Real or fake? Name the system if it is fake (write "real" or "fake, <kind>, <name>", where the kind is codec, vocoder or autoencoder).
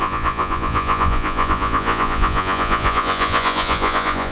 fake, vocoder, Vocos